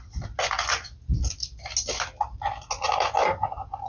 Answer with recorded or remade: recorded